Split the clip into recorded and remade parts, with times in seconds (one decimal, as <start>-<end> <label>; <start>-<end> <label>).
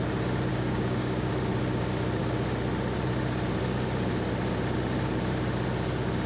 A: 0.0-0.5 recorded; 0.5-1.3 remade; 1.3-6.3 recorded